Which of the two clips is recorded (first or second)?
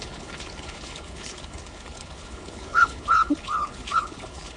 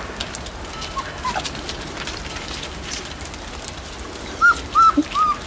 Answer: second